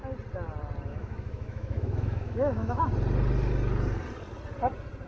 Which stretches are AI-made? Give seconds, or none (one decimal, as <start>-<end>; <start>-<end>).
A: 0.9-2.8